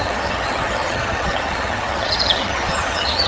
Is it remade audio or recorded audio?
remade